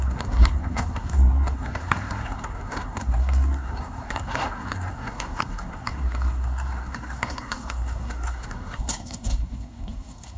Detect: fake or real fake